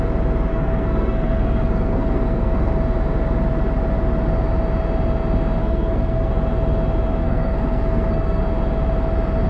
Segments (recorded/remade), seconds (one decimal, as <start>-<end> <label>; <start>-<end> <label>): 0.0-0.5 recorded; 0.5-2.7 remade; 2.7-5.6 recorded; 5.6-6.3 remade; 6.3-7.2 recorded; 7.2-8.4 remade; 8.4-9.5 recorded